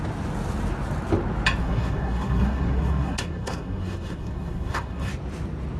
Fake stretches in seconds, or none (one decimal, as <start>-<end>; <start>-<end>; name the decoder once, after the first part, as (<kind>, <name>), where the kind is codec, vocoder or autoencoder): 1.6-5.1 (codec, SNAC)